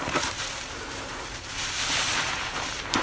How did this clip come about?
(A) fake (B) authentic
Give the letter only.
A